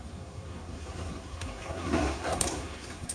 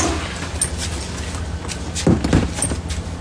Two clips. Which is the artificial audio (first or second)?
first